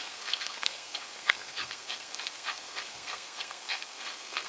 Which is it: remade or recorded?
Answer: remade